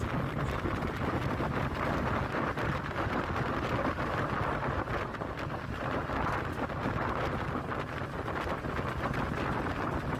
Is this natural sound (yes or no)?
yes